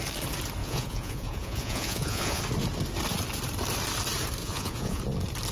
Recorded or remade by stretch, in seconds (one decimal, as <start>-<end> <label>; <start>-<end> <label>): 0.0-0.6 recorded; 0.6-2.4 remade; 2.4-4.4 recorded; 4.4-5.0 remade; 5.0-5.5 recorded